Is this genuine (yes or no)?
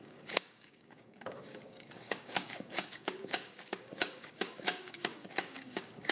no